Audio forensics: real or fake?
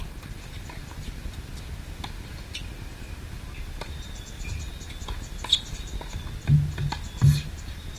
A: real